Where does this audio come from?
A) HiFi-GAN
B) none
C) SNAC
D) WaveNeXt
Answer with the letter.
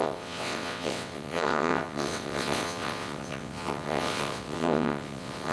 D